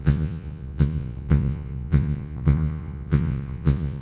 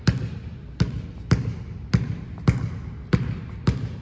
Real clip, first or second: second